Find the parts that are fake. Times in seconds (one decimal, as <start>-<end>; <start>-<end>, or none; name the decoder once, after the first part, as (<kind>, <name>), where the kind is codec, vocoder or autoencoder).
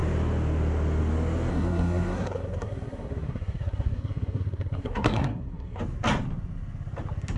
1.5-5.8 (codec, SNAC)